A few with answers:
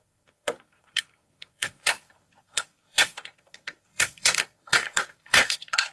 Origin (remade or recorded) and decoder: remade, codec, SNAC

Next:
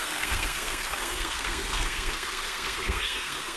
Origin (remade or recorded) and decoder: remade, codec, SNAC